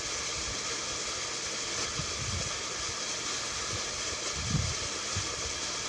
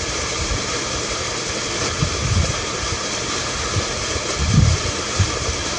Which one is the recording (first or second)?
first